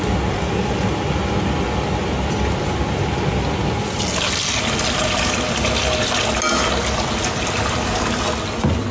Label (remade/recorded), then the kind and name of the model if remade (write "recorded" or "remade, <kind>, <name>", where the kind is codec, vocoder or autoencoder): recorded